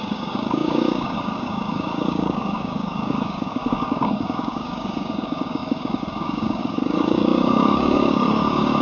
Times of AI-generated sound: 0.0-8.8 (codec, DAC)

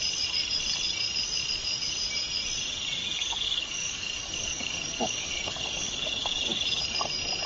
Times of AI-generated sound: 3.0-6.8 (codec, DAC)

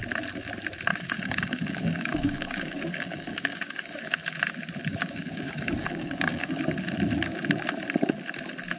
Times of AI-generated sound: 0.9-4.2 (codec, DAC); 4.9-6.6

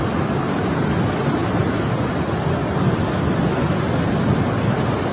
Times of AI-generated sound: none